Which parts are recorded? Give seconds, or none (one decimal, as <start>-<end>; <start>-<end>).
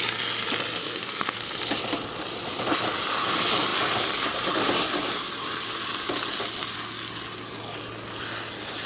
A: 0.0-0.8; 1.5-8.9